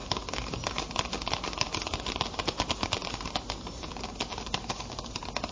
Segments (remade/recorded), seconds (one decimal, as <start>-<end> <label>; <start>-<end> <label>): 0.0-5.5 recorded